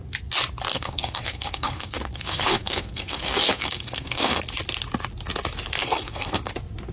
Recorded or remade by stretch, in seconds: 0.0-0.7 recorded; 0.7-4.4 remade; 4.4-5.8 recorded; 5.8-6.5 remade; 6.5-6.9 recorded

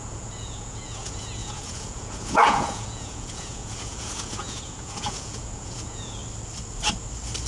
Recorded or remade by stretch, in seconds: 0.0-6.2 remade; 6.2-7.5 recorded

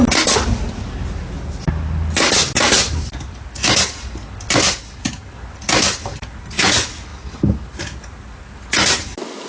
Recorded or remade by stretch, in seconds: 0.0-9.5 recorded

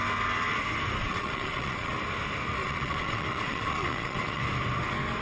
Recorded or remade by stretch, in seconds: 0.0-1.0 recorded; 1.0-1.9 remade; 1.9-2.6 recorded; 2.6-4.4 remade; 4.4-5.2 recorded